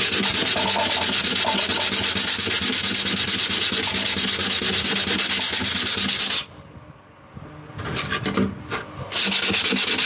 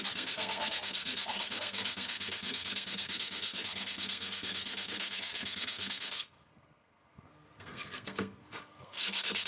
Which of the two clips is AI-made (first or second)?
second